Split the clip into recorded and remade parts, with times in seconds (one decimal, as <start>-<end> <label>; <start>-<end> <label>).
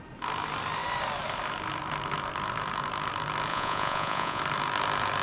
0.0-3.5 recorded; 3.5-4.4 remade; 4.4-5.2 recorded